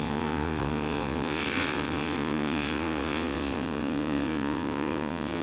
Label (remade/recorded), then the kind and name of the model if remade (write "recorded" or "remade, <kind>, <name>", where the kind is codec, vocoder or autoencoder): remade, vocoder, WaveNeXt